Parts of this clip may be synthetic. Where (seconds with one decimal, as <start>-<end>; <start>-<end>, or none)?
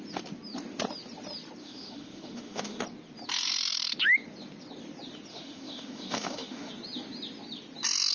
1.6-2.8; 5.3-6.7